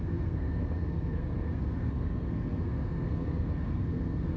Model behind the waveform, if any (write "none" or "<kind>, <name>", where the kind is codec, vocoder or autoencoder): codec, SNAC